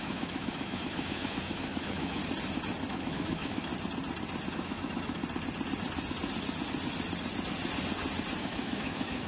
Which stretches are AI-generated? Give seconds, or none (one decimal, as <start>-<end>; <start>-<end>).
0.0-2.2; 2.9-3.7; 4.5-5.2; 8.4-9.3

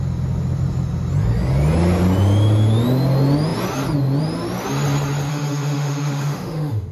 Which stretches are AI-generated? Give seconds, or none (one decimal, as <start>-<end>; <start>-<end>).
5.3-6.9

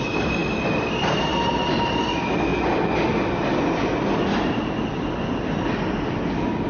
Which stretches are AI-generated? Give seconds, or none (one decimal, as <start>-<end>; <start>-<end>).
none